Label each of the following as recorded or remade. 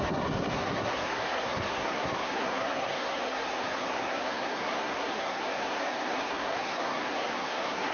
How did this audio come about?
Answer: remade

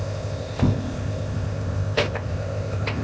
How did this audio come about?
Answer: remade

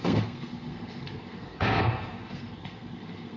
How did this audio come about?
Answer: remade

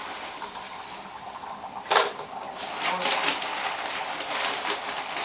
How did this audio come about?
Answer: recorded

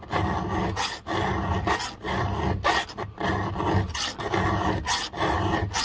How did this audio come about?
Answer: recorded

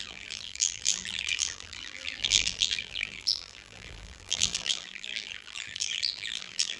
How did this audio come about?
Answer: remade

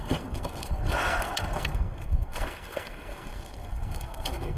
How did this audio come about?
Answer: remade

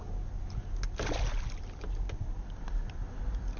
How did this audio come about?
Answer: recorded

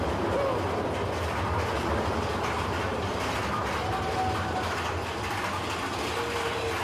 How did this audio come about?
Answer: recorded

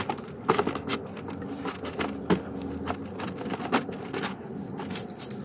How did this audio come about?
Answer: recorded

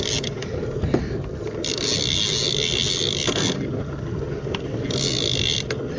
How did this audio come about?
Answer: recorded